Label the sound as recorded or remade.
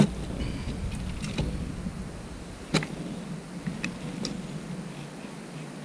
recorded